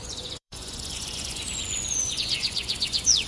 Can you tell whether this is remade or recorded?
remade